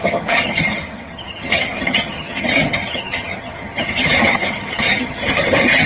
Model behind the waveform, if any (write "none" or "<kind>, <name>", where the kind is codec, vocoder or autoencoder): vocoder, HiFi-GAN